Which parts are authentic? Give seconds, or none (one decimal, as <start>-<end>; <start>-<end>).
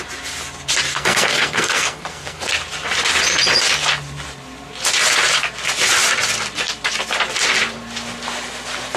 0.0-0.9; 2.5-9.0